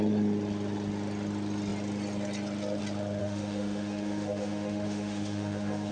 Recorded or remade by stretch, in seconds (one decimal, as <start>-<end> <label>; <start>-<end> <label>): 0.0-3.2 recorded; 3.2-5.9 remade